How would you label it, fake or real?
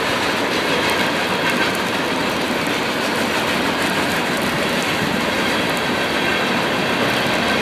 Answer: real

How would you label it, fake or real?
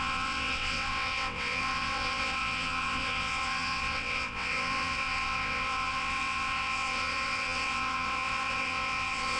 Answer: fake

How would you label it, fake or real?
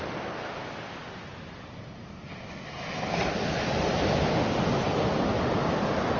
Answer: real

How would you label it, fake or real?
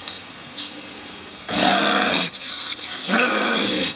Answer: fake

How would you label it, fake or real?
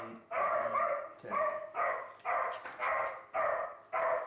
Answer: real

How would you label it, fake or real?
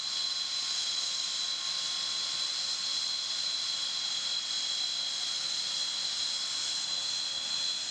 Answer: real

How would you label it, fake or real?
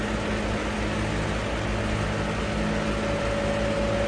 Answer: real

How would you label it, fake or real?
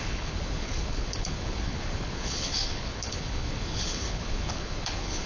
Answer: fake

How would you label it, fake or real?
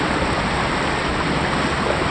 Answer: real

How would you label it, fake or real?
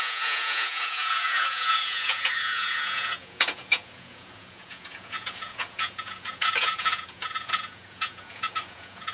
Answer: fake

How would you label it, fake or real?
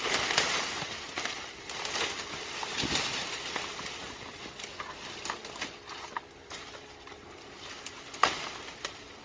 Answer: real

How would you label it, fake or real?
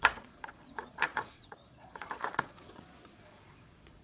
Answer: fake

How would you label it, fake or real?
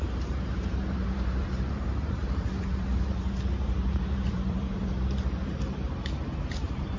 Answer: fake